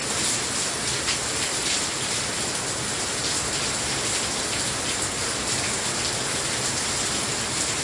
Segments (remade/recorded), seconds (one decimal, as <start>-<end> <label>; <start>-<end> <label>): 0.0-7.8 recorded